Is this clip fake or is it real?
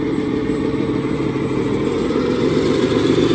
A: fake